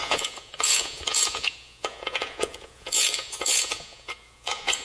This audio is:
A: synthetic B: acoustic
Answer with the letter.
A